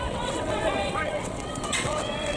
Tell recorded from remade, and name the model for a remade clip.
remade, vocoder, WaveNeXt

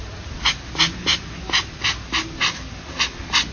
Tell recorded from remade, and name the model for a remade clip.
recorded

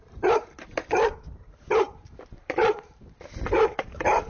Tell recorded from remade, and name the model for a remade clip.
remade, vocoder, BigVGAN v2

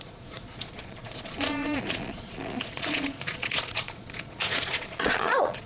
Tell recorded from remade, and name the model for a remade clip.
remade, vocoder, Vocos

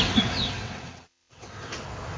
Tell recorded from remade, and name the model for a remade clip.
remade, vocoder, WaveNeXt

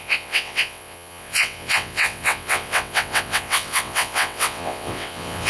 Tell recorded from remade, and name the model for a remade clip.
remade, vocoder, WaveNeXt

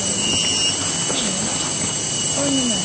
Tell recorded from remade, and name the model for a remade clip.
recorded